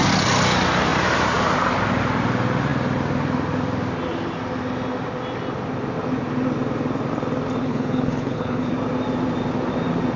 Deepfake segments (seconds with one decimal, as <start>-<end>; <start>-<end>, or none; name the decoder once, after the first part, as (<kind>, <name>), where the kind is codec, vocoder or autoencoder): 7.6-8.7 (codec, HILCodec)